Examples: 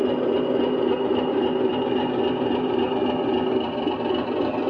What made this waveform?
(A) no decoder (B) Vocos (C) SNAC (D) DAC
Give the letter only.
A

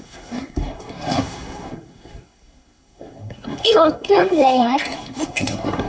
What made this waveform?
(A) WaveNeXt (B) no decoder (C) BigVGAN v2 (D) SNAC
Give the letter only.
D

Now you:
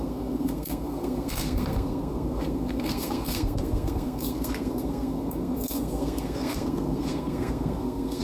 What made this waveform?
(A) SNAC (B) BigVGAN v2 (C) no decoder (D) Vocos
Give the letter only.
A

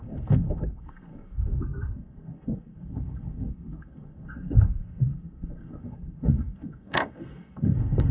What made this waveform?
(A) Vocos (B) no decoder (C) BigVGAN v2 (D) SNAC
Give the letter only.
D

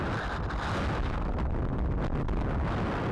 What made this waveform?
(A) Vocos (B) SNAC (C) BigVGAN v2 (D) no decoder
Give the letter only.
D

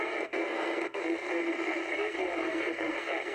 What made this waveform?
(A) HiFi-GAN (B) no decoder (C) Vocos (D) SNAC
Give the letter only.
D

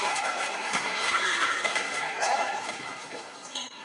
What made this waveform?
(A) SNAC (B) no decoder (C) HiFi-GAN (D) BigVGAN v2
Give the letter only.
A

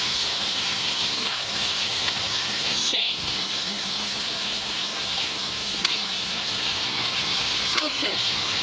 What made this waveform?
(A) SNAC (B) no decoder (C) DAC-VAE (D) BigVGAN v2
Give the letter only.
A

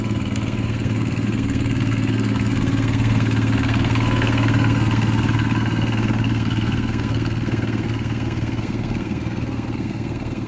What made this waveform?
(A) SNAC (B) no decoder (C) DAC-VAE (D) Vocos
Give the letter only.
A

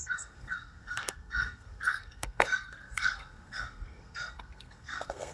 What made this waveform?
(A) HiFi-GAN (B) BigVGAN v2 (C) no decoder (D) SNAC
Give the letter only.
D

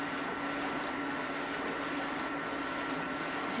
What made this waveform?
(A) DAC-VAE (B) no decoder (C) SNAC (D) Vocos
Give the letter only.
B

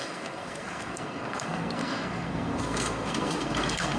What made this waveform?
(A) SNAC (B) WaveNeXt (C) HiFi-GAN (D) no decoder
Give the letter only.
A